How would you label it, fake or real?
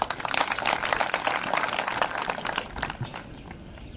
real